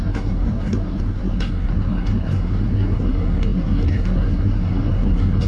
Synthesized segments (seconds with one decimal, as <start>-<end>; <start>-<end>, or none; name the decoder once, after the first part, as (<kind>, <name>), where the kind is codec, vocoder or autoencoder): 0.0-5.5 (codec, SNAC)